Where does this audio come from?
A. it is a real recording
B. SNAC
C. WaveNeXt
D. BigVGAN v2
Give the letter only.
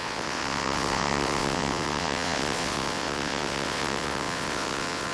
C